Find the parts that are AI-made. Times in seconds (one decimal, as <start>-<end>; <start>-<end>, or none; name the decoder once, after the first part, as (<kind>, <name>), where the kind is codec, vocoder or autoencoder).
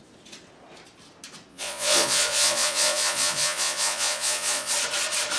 1.5-4.7 (vocoder, Vocos)